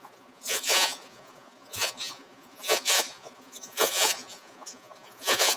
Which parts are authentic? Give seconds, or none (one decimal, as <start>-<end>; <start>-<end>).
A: none